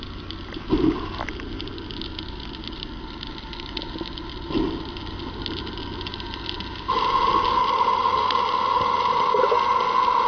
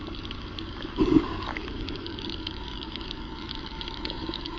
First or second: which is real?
first